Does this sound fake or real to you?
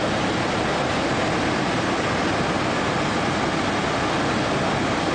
real